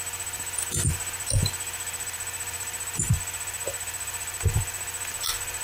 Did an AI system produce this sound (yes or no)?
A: no